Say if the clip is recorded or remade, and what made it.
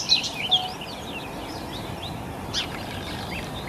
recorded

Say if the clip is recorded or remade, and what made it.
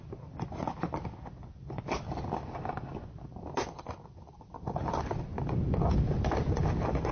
recorded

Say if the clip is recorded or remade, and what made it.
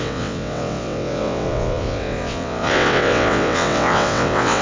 remade, vocoder, WaveNeXt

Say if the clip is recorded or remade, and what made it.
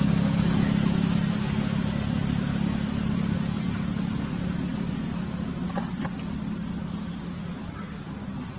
recorded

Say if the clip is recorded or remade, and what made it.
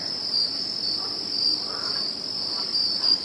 remade, vocoder, BigVGAN v2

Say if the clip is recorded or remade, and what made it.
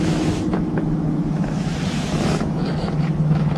remade, autoencoder, DAC-VAE